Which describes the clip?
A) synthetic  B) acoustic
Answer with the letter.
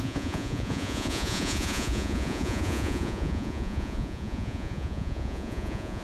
A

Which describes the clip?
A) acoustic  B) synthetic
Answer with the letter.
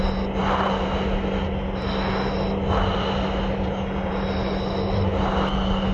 A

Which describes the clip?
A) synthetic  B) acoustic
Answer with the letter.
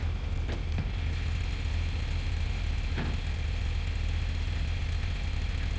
B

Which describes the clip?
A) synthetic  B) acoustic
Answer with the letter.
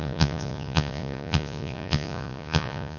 A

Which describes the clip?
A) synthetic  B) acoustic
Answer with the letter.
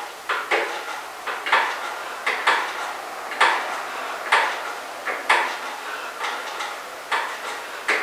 B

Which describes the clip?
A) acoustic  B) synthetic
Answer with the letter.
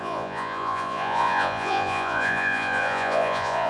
B